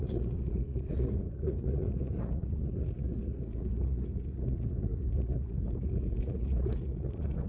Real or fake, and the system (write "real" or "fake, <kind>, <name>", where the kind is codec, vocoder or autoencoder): fake, vocoder, Vocos